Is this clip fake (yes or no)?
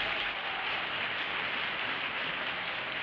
no